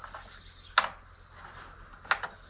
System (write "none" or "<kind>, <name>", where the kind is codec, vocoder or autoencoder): none